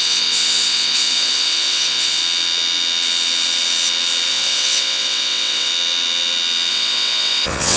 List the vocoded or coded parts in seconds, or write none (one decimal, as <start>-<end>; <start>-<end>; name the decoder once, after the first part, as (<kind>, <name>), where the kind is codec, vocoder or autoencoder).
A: 0.0-2.2 (vocoder, WaveNeXt); 4.3-5.7; 6.7-7.8

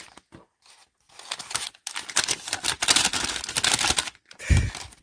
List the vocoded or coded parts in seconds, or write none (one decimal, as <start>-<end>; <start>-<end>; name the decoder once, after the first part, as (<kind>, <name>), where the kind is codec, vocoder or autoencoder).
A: none

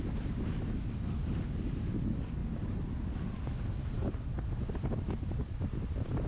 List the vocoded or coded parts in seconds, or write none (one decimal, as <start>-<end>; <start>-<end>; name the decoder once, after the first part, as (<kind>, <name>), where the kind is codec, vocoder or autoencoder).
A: none

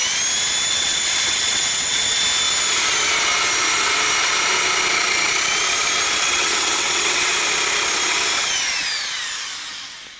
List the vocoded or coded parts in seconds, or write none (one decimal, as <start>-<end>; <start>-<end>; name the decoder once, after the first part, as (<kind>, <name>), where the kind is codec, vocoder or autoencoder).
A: 0.7-2.2 (vocoder, WaveNeXt); 6.1-7.3

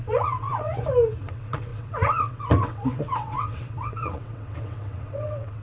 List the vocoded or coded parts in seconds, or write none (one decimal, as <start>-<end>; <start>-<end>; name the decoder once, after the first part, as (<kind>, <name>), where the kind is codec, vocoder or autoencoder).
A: 0.0-0.7 (vocoder, WaveNeXt); 1.2-5.6

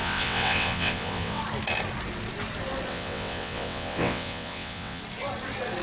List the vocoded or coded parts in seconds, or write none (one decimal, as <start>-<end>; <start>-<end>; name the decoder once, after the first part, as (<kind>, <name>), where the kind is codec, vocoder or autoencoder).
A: 0.0-1.4 (vocoder, WaveNeXt); 2.9-5.0

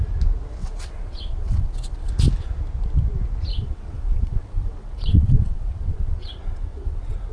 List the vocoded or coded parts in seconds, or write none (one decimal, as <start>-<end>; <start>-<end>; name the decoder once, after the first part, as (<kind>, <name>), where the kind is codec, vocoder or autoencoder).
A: 0.6-2.1 (vocoder, WaveNeXt); 3.5-7.3